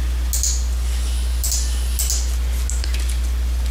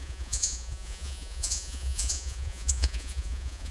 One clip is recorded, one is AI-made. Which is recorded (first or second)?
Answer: first